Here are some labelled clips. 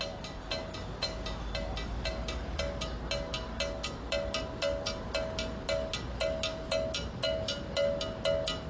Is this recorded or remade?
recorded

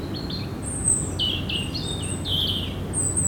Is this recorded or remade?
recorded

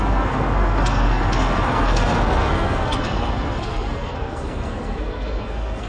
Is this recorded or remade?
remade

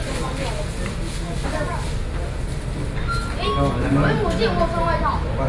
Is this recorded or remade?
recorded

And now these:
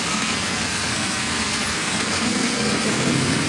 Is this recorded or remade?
remade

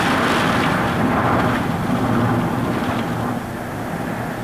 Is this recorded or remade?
recorded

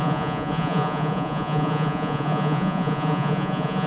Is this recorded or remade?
remade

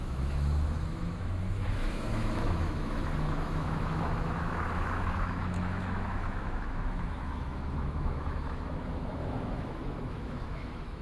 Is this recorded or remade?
remade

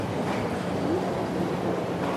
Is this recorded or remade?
recorded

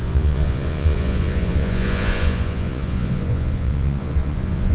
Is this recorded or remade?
remade